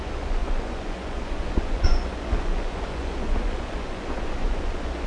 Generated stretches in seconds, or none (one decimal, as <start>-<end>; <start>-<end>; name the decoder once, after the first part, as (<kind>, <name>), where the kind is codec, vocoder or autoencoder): 0.0-5.1 (vocoder, Vocos)